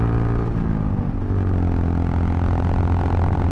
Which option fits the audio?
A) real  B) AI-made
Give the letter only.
A